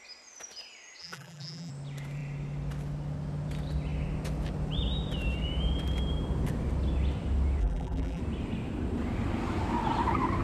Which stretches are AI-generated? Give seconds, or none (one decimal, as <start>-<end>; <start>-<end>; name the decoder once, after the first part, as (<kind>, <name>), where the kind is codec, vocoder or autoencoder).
1.0-1.7 (vocoder, BigVGAN v2); 7.6-8.2